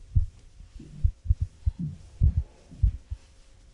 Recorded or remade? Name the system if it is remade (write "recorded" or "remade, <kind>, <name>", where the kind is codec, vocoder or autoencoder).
recorded